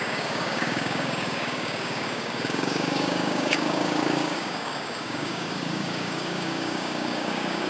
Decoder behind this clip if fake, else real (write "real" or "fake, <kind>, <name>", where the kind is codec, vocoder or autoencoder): fake, codec, DAC